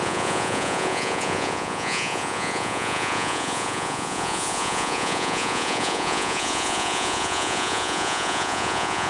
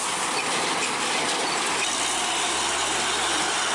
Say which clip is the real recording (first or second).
second